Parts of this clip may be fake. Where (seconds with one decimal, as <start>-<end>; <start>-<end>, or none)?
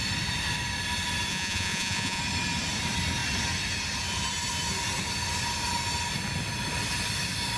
1.3-2.2